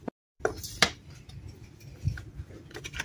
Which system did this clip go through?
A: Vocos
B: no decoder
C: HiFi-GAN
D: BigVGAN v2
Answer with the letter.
D